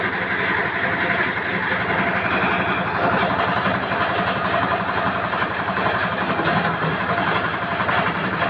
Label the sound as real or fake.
real